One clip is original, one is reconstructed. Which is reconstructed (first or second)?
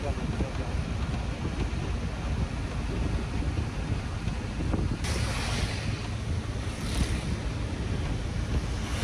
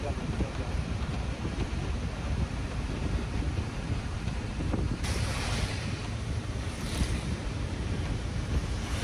second